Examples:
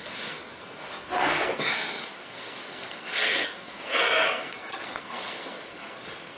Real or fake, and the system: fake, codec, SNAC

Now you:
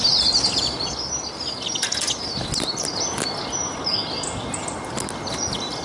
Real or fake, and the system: real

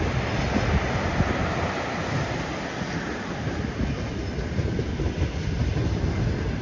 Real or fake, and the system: real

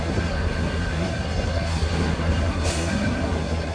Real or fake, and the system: fake, codec, SNAC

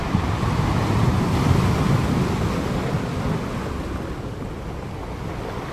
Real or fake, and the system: real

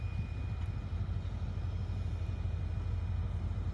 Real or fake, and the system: real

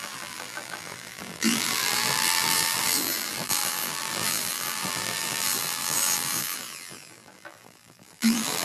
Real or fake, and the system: fake, vocoder, BigVGAN v2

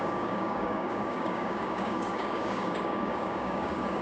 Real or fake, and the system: fake, codec, DAC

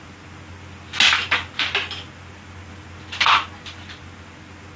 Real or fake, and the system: real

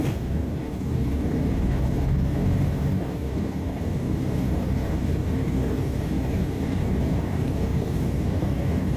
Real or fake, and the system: fake, codec, DAC